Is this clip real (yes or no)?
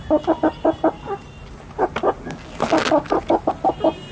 yes